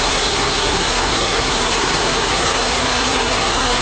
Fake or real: fake